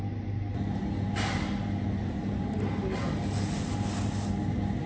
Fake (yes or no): no